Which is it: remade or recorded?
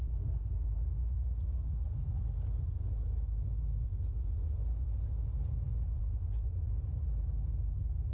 recorded